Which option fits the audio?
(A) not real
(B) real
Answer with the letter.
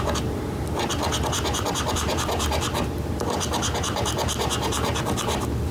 A